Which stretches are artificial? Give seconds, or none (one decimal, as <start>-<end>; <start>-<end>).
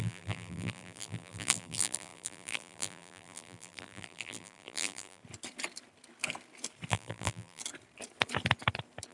0.0-5.2; 6.9-7.6